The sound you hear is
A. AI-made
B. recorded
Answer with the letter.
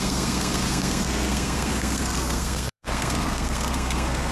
A